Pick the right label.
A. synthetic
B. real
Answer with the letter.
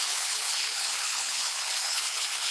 A